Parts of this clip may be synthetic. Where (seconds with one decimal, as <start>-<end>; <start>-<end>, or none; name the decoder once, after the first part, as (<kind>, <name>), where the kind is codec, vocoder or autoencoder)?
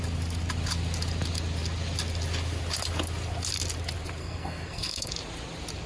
4.2-5.1 (codec, SNAC)